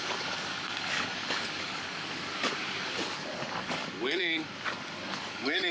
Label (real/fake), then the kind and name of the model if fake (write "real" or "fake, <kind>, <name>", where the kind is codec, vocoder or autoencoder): fake, codec, DAC